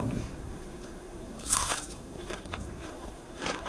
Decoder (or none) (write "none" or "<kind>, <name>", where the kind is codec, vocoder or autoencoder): codec, SNAC